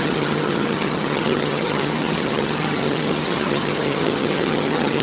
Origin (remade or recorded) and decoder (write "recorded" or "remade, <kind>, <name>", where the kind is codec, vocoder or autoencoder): remade, vocoder, HiFi-GAN